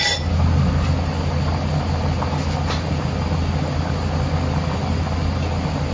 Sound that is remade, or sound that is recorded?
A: recorded